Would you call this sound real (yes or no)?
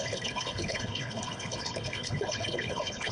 no